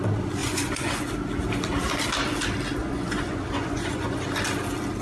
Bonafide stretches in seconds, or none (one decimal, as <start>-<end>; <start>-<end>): 0.0-0.4; 1.0-2.8; 4.2-5.0